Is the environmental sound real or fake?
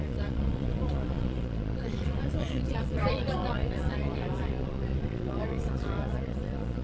fake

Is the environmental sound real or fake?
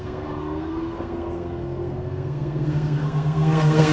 fake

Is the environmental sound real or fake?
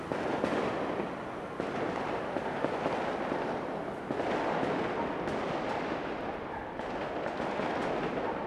real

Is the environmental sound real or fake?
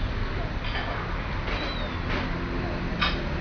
real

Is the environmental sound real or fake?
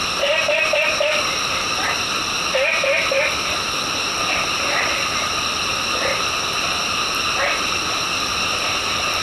fake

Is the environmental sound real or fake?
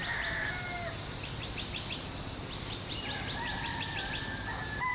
real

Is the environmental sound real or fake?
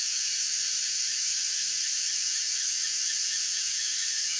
fake